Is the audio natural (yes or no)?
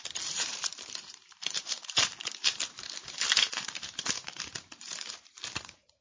no